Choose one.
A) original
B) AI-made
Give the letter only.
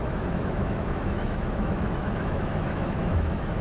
B